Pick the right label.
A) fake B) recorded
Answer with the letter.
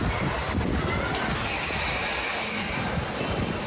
B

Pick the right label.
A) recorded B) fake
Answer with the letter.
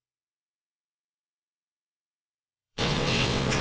B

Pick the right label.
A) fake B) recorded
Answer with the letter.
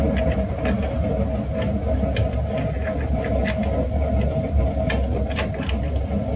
B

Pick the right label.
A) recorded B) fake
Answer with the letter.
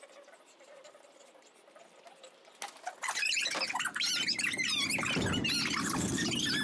A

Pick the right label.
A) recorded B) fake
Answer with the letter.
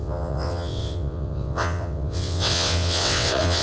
B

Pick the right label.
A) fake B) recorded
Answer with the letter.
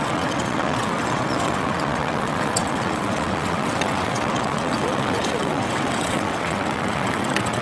A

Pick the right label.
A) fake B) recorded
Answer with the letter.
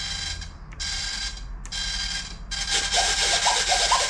B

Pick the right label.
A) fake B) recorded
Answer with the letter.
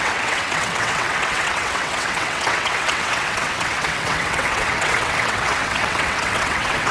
A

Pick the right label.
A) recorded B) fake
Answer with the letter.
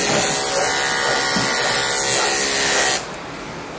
A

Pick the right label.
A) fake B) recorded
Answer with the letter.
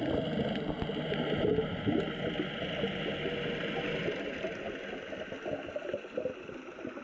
B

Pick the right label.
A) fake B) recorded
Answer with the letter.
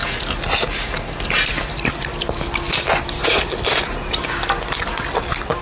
B